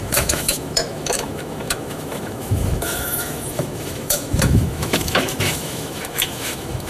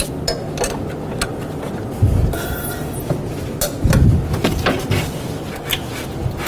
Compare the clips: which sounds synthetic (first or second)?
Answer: first